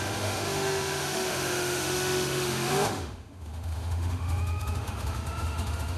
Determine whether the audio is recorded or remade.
remade